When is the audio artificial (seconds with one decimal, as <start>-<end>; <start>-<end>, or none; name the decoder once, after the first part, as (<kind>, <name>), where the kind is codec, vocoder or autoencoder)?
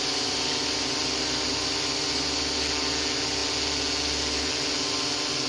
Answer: none